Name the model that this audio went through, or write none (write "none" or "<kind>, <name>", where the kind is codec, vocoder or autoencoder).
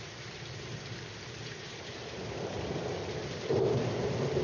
none